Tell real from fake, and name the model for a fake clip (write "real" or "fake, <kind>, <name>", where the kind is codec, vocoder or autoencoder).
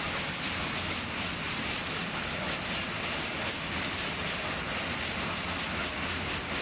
real